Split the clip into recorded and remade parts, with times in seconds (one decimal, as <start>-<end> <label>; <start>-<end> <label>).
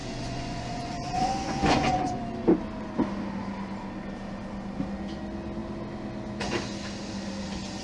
0.0-2.2 remade; 2.2-7.8 recorded